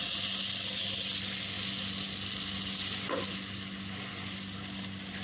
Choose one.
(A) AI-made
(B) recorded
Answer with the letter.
B